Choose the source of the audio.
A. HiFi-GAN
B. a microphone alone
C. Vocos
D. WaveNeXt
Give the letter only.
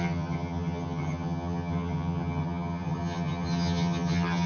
A